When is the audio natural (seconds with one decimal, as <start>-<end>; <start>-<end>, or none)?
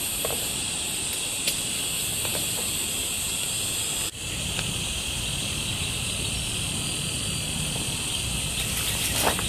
0.0-9.5